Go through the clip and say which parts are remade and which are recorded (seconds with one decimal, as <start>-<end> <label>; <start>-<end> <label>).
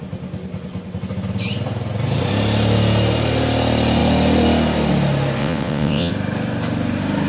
0.0-5.4 recorded; 5.4-6.1 remade; 6.1-7.3 recorded